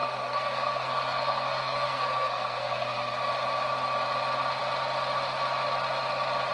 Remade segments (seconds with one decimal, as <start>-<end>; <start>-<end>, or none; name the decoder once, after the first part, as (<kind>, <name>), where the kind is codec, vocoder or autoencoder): 0.0-3.2 (codec, SNAC)